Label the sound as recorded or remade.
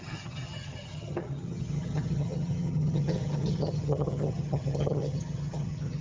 remade